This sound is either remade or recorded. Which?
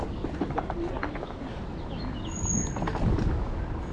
recorded